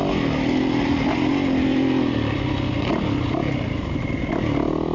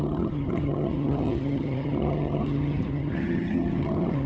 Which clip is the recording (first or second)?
first